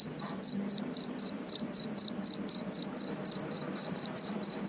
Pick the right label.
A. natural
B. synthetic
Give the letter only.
B